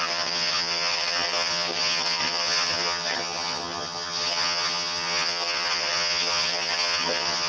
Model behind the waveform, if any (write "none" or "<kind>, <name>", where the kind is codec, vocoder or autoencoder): vocoder, HiFi-GAN